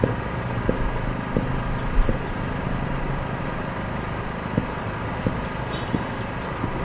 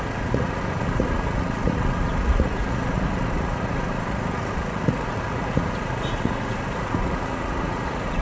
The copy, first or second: second